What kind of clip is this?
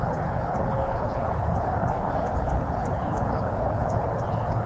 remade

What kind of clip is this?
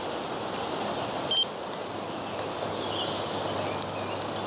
recorded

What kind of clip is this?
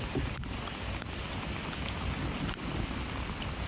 recorded